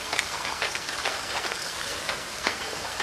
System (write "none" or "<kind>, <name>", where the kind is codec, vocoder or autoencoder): codec, SNAC